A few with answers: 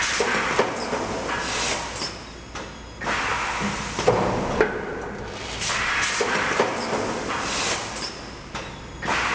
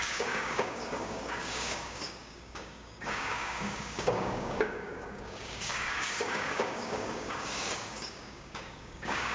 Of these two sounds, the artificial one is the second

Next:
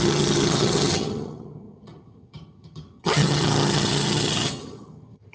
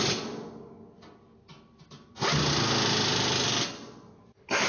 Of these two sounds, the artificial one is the first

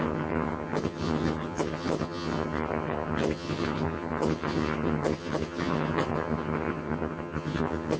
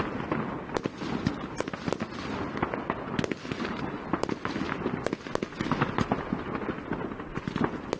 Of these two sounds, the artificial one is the first